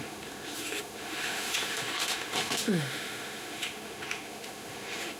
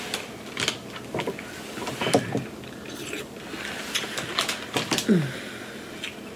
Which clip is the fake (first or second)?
first